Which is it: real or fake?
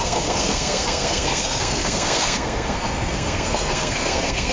fake